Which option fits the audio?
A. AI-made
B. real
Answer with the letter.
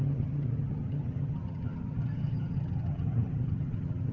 A